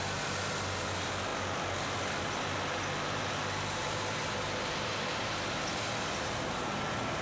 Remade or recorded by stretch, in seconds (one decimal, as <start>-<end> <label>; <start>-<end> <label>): 0.0-7.2 recorded